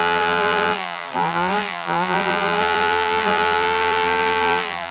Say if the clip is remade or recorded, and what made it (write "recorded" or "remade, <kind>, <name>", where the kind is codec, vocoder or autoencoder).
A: remade, vocoder, BigVGAN v2